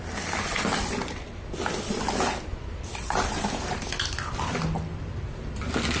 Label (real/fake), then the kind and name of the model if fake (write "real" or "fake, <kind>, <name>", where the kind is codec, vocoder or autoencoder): real